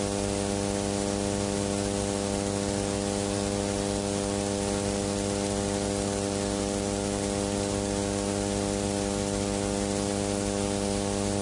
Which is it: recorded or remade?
recorded